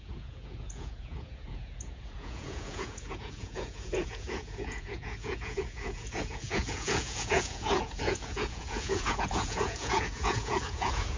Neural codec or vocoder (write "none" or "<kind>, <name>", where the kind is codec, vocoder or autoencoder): vocoder, Vocos